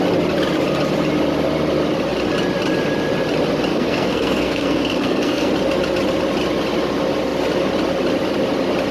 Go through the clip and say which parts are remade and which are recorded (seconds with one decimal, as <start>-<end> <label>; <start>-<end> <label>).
0.0-3.7 recorded; 3.7-5.5 remade; 5.5-8.9 recorded